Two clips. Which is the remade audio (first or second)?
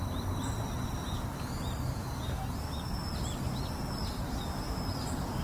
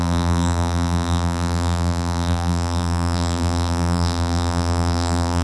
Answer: second